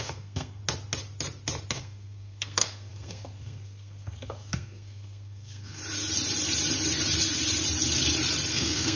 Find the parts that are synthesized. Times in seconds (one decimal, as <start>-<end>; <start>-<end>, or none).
0.0-0.6; 1.7-5.8; 8.5-9.0